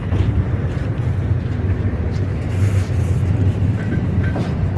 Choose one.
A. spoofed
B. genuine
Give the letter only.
A